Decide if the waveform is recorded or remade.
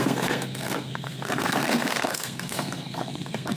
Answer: remade